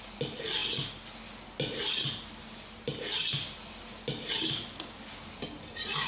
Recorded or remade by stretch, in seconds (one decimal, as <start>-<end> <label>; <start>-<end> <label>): 0.0-6.1 recorded